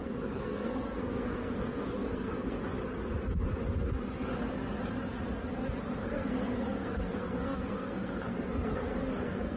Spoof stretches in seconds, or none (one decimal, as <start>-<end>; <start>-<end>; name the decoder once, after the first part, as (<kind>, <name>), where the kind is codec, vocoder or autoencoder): 0.0-2.6 (codec, SNAC); 6.0-9.6